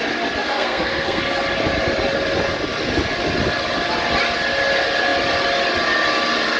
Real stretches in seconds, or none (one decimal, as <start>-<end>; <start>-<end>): 0.0-0.4; 1.2-6.6